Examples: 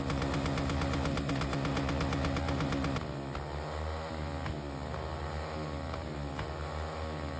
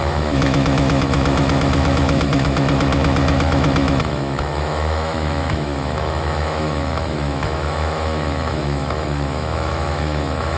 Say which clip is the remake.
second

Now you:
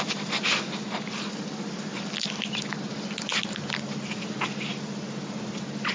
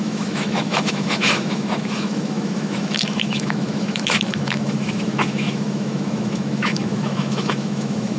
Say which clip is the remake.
second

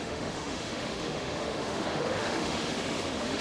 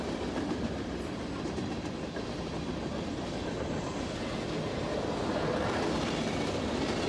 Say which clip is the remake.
first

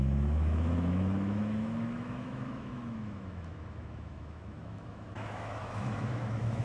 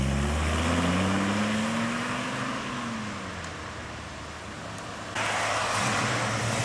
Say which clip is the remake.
first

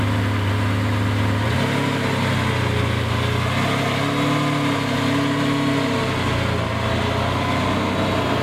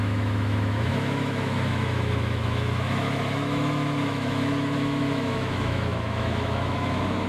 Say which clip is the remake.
second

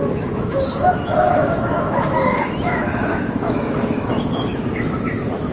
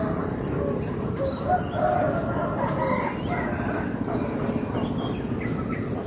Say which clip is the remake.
first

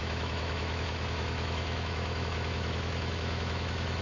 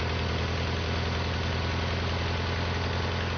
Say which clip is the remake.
first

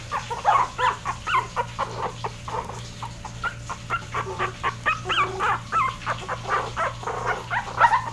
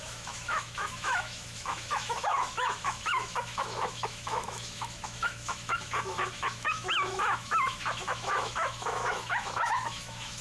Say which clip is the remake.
second